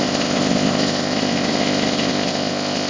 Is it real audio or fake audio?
fake